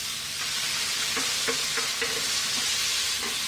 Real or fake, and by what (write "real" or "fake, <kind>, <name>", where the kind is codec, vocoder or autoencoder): real